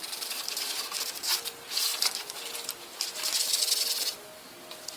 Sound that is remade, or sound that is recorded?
recorded